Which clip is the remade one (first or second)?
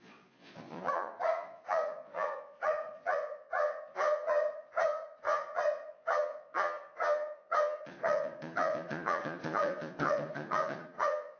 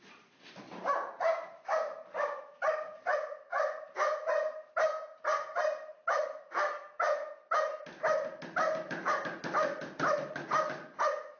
first